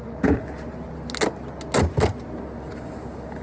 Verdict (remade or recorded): recorded